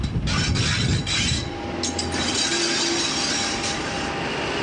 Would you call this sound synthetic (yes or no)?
no